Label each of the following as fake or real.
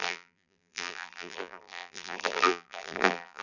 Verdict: fake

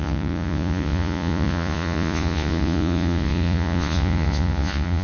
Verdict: fake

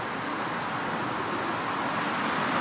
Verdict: real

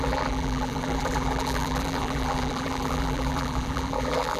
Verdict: fake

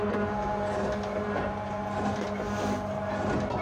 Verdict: real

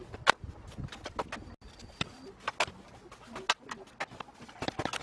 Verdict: real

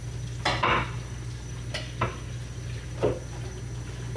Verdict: real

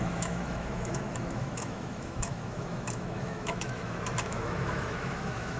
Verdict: fake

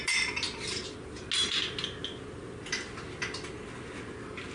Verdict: real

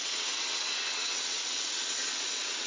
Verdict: fake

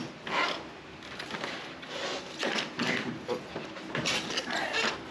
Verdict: real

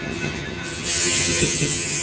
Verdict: fake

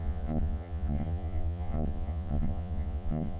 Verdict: fake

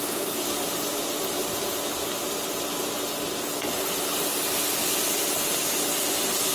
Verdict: real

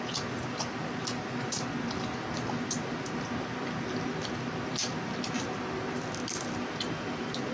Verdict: real